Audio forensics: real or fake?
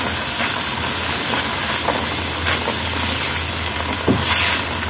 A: real